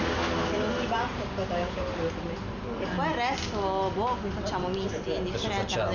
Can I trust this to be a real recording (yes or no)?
yes